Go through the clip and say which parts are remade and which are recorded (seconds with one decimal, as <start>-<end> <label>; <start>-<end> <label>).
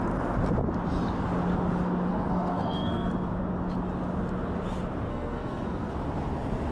0.0-2.1 recorded; 2.1-3.1 remade; 3.1-5.1 recorded; 5.1-5.9 remade; 5.9-6.7 recorded